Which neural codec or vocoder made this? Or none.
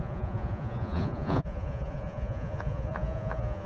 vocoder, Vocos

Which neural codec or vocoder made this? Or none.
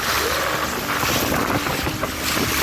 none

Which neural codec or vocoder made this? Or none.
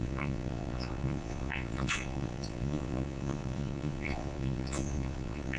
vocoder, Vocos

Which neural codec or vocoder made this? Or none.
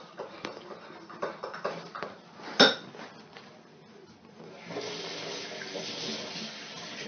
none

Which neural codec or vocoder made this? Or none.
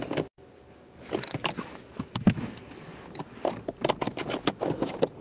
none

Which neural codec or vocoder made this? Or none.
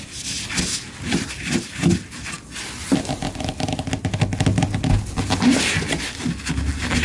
none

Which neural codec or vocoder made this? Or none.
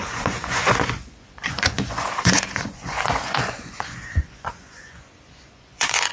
vocoder, Vocos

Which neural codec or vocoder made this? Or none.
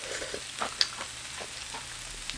none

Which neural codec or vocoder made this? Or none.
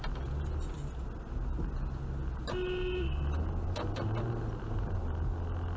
none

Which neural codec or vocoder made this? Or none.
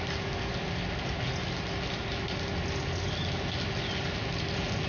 none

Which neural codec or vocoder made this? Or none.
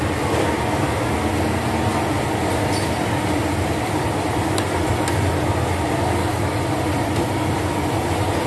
none